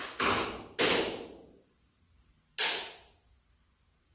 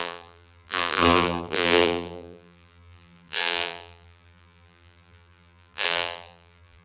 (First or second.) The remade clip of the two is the second